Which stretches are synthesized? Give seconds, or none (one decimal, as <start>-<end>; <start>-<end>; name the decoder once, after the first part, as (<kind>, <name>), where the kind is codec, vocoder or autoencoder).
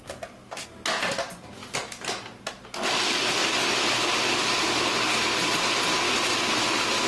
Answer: 3.4-4.9 (vocoder, BigVGAN v2)